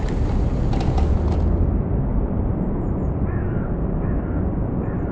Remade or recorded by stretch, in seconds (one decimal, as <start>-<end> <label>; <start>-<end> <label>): 0.0-2.1 recorded; 2.1-4.1 remade; 4.1-5.1 recorded